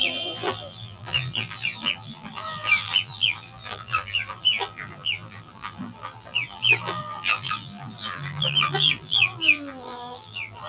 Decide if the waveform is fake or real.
fake